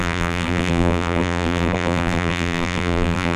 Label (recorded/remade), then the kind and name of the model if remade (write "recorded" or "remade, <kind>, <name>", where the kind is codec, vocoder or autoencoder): remade, vocoder, BigVGAN v2